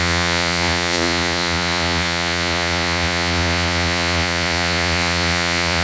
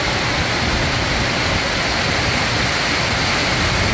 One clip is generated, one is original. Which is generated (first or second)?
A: first